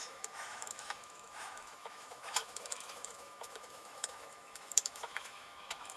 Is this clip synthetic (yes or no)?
yes